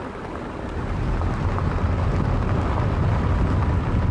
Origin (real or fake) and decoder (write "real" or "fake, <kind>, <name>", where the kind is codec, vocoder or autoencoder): real